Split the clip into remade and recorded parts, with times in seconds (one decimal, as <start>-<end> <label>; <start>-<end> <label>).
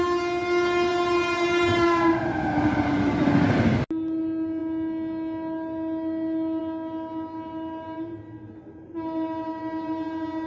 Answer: 0.0-10.5 recorded